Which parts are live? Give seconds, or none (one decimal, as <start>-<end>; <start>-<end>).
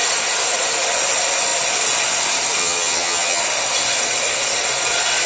0.0-2.6; 3.4-5.3